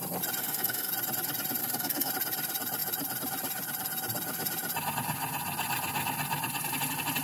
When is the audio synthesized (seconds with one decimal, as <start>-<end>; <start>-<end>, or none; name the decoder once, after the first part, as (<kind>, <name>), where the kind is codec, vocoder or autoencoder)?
0.4-0.9 (codec, SNAC); 1.6-2.1